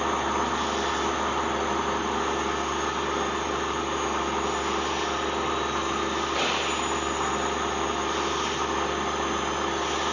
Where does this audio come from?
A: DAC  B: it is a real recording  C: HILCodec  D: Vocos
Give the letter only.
B